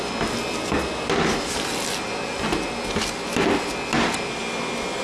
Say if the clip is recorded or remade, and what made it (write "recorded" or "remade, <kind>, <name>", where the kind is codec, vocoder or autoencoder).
recorded